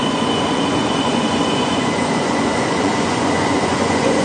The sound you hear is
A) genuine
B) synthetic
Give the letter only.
B